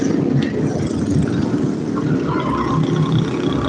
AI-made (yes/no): no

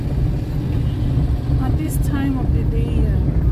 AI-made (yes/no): no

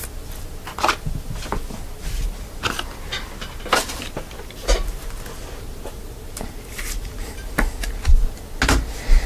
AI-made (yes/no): no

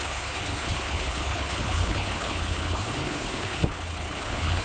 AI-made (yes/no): yes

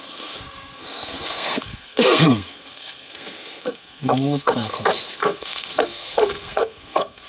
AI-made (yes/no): yes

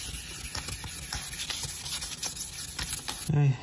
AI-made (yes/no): no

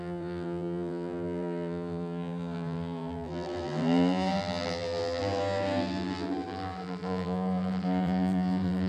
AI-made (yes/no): yes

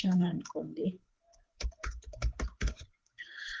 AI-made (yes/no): yes